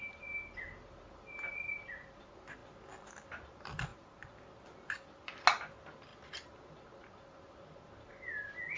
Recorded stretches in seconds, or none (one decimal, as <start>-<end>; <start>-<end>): 0.0-8.8